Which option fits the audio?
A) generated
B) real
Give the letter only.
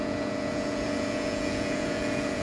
A